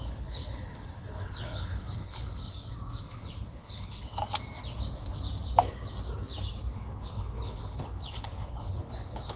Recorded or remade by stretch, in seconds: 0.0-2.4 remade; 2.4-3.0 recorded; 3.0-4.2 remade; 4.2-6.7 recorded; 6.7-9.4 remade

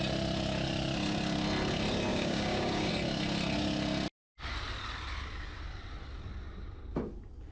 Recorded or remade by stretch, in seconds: 0.0-2.1 recorded; 2.1-2.9 remade; 2.9-7.5 recorded

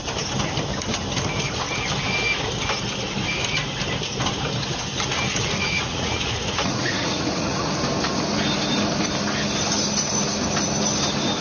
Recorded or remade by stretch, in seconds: 0.0-5.4 recorded; 5.4-7.7 remade; 7.7-11.4 recorded

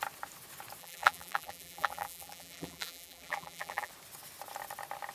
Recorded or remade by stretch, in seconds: 0.0-0.8 recorded; 0.8-3.9 remade; 3.9-5.1 recorded